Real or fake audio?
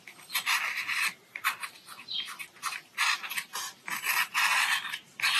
real